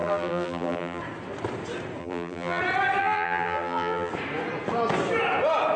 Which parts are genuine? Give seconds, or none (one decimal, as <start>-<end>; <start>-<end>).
1.0-2.0; 2.6-3.0; 4.1-5.8

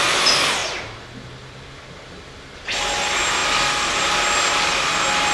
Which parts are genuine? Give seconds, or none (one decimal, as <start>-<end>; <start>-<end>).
0.0-5.3